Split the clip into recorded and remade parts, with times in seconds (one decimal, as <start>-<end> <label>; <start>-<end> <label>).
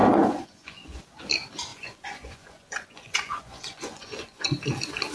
0.0-1.0 remade; 1.0-1.7 recorded; 1.7-4.6 remade; 4.6-5.1 recorded